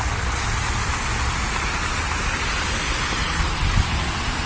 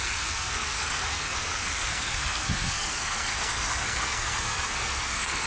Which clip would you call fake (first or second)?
second